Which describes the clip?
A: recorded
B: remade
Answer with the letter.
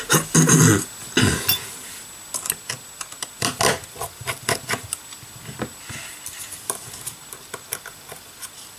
A